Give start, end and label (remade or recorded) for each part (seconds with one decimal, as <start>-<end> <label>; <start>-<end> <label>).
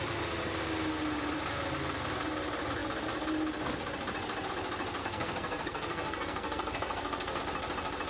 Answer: 0.0-5.0 recorded; 5.0-7.4 remade; 7.4-8.1 recorded